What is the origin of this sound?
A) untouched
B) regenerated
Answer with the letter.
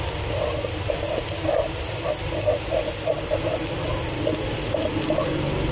B